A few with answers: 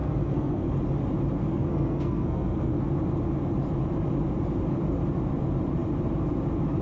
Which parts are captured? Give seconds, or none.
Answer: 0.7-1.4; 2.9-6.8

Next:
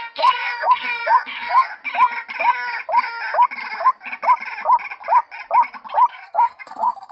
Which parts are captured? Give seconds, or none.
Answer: 1.8-6.1

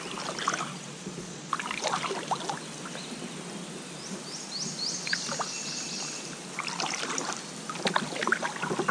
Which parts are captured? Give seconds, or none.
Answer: 0.0-0.7; 1.5-8.9

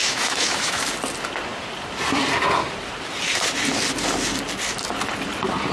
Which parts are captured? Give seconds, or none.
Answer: 0.8-5.7

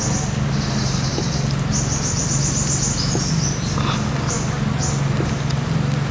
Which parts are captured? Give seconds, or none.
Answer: 0.0-6.1

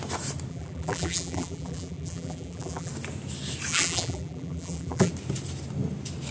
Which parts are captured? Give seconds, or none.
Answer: 0.0-0.5; 2.9-3.7; 5.1-6.3

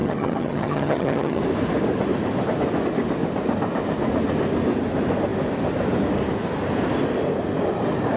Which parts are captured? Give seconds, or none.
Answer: 1.4-8.2